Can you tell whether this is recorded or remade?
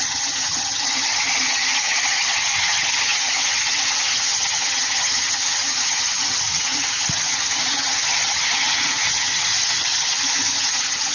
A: remade